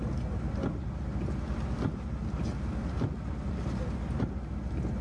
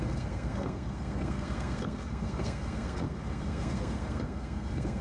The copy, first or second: second